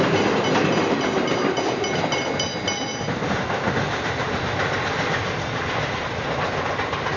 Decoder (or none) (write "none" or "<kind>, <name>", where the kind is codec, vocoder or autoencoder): none